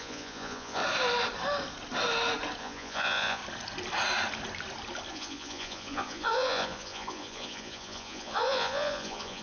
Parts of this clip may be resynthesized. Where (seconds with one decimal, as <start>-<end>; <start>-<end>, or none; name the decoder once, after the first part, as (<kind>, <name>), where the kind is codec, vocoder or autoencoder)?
0.0-0.8 (vocoder, Vocos); 2.6-3.4; 5.1-9.4